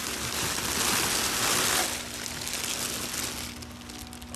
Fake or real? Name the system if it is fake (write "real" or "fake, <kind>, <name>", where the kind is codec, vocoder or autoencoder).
real